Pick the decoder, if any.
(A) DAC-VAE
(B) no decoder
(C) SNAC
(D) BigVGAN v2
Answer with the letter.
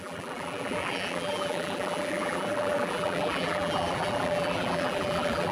D